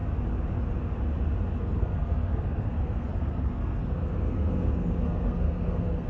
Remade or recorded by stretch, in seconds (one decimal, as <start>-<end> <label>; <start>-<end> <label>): 0.0-1.6 recorded; 1.6-6.1 remade